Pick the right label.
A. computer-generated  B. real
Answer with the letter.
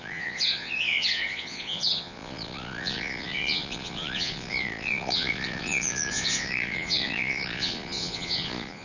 A